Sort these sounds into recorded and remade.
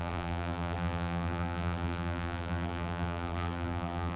remade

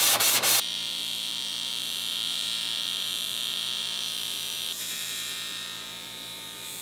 remade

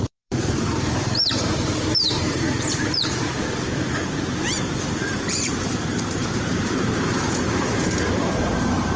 remade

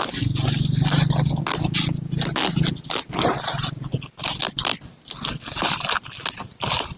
recorded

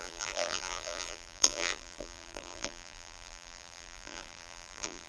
remade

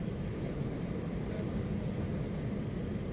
remade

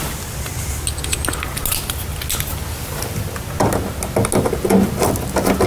recorded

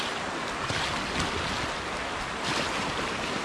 recorded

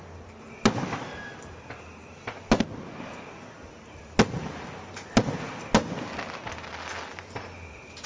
recorded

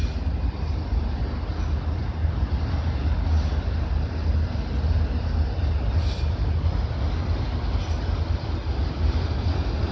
recorded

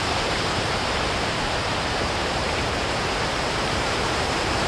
remade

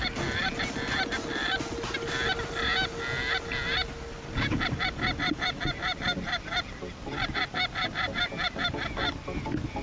recorded